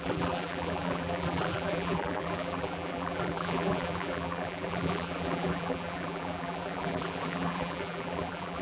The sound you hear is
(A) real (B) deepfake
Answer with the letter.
B